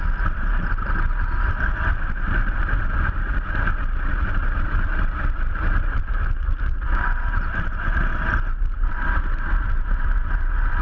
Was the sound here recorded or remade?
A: recorded